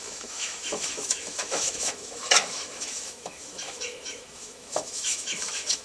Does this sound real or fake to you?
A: fake